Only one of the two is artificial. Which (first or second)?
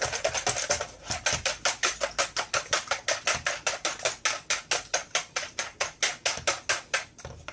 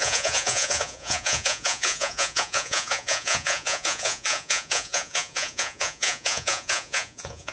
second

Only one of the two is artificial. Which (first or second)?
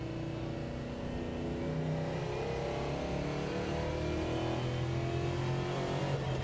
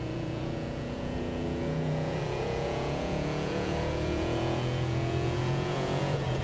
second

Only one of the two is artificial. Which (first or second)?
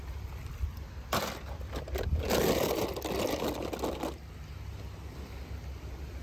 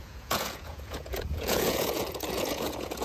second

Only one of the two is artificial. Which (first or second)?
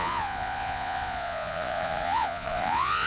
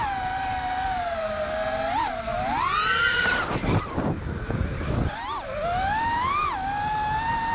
first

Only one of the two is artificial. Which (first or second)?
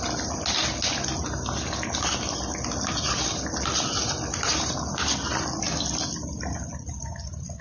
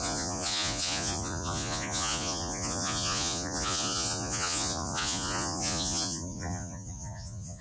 second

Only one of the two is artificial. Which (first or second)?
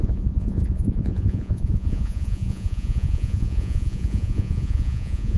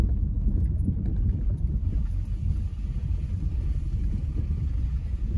first